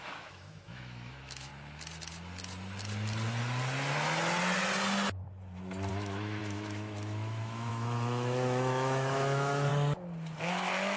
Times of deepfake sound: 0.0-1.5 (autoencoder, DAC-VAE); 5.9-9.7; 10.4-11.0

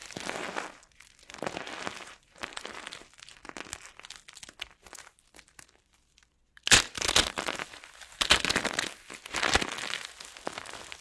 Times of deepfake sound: none

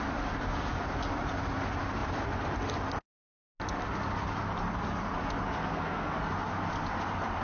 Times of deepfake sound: 5.6-6.1 (codec, SNAC)

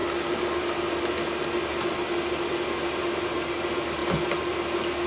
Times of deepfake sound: none